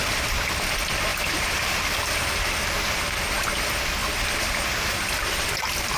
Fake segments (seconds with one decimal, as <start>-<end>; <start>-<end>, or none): 1.1-3.0; 4.0-5.6